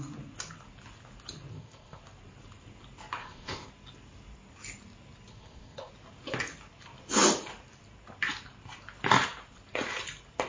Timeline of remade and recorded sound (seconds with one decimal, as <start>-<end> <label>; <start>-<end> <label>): 0.0-1.5 recorded; 1.5-2.0 remade; 2.0-3.2 recorded; 3.2-3.7 remade; 3.7-5.3 recorded; 5.3-5.9 remade; 5.9-10.5 recorded